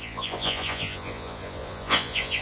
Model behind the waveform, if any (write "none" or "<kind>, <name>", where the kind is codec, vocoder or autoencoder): vocoder, Vocos